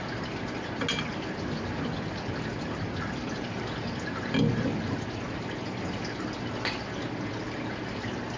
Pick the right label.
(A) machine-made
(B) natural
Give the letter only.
B